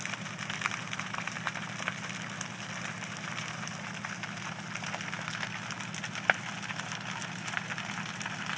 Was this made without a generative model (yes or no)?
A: yes